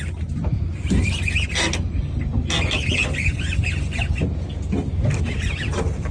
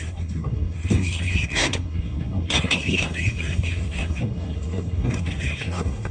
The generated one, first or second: second